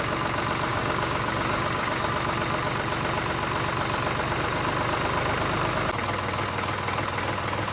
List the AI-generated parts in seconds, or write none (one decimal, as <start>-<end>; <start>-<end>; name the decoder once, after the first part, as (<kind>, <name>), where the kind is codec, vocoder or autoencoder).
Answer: 0.7-2.1 (codec, DAC)